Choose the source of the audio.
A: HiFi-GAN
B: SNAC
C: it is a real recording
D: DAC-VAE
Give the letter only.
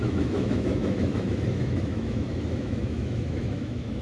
D